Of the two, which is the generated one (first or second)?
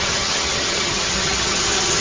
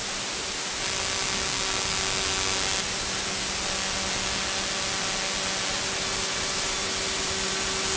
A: first